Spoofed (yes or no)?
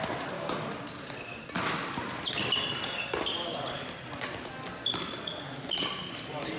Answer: no